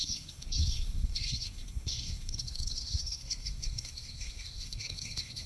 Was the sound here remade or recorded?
remade